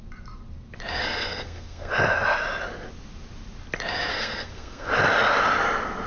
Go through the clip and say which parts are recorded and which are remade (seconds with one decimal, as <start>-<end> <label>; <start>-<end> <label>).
0.0-1.0 recorded; 1.0-1.9 remade; 1.9-4.1 recorded; 4.1-4.9 remade; 4.9-6.1 recorded